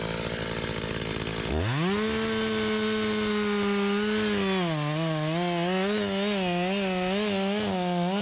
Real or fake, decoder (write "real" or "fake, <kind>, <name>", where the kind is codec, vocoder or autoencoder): real